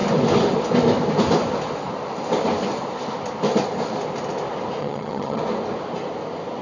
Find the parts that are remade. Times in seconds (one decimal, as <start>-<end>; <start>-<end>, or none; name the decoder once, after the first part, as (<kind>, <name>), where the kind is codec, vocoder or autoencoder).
4.8-5.4 (vocoder, HiFi-GAN)

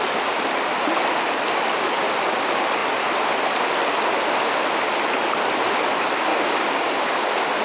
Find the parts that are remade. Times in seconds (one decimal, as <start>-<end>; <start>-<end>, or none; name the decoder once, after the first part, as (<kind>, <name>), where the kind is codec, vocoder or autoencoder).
6.3-7.6 (codec, DAC)

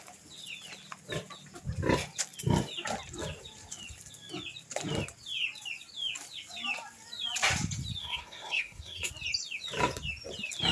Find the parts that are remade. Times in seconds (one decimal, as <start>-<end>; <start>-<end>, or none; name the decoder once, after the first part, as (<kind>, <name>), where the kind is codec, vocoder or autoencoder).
8.0-9.1 (codec, SNAC)

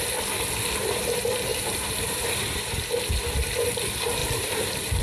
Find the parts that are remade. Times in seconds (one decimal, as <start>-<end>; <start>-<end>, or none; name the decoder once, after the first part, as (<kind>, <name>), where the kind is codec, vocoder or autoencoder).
1.5-2.9 (vocoder, BigVGAN v2); 4.2-5.0

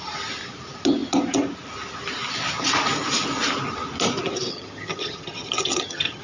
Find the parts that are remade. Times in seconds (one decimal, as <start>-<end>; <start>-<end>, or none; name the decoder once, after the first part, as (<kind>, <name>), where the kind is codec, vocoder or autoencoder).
4.5-6.2 (vocoder, HiFi-GAN)

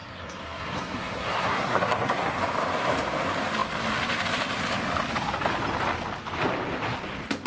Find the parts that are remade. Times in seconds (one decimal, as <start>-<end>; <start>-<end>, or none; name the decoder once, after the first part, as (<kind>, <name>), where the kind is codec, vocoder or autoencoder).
0.0-2.4 (codec, SNAC)

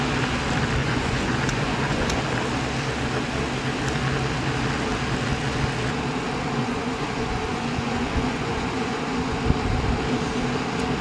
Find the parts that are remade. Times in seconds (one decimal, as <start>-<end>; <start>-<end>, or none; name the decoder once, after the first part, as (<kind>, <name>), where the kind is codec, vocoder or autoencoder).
0.8-2.2 (vocoder, Vocos); 6.6-9.4